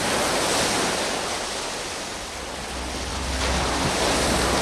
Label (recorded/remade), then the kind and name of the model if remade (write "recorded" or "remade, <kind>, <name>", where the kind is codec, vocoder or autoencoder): recorded